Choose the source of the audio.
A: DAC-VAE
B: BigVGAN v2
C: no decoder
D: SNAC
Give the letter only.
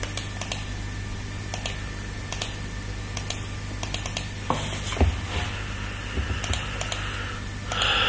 C